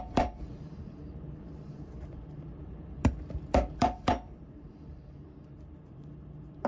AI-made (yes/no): yes